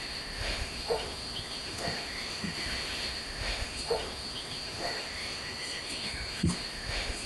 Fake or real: fake